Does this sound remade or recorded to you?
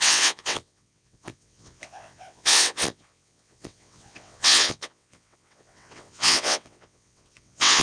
remade